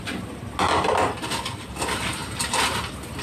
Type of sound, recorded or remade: recorded